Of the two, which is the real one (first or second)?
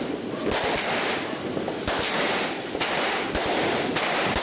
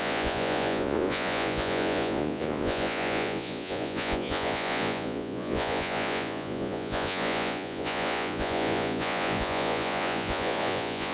first